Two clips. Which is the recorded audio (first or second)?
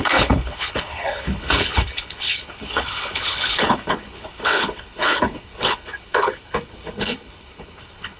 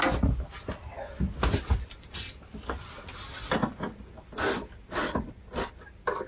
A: second